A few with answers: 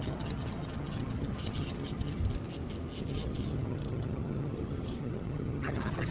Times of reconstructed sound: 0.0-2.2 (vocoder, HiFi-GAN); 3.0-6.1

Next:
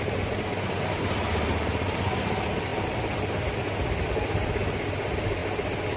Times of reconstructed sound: none

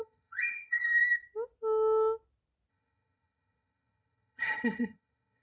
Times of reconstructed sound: 0.0-1.0 (vocoder, HiFi-GAN); 2.7-5.4